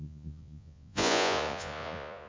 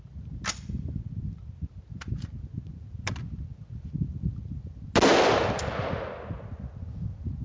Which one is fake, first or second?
first